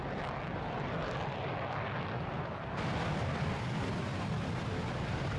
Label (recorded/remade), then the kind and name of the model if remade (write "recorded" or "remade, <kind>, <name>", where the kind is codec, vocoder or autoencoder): recorded